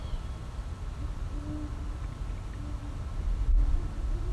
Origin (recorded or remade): recorded